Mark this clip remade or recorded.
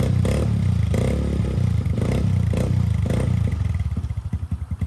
recorded